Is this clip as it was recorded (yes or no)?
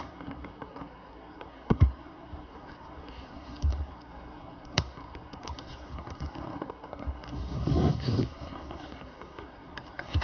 no